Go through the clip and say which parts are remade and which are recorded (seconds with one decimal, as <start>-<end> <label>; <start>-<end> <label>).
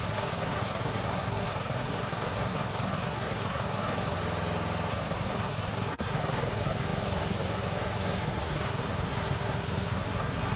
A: 0.0-4.2 remade; 4.2-4.9 recorded; 4.9-10.6 remade